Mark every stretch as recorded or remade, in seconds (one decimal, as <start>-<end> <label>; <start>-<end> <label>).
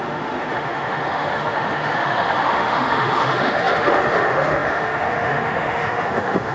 0.0-6.5 remade